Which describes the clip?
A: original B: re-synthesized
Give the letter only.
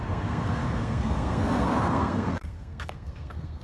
B